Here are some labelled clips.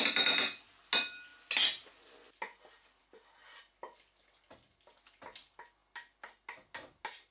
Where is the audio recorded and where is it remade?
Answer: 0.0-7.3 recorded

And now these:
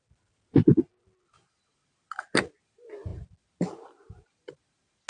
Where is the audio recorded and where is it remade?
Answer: 0.0-5.1 recorded

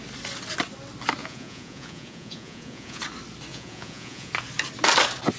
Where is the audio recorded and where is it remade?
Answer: 0.0-1.2 recorded; 1.2-3.0 remade; 3.0-3.5 recorded; 3.5-4.3 remade; 4.3-5.4 recorded